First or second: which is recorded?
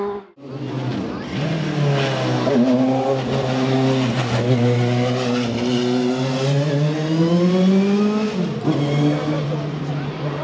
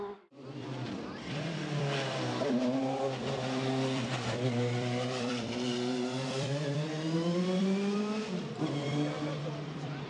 first